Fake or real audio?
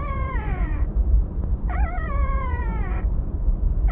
fake